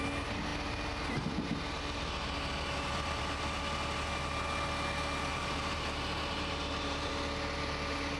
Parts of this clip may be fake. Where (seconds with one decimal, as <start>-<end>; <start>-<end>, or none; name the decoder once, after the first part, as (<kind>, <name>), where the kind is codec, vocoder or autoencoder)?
5.3-7.1 (vocoder, BigVGAN v2)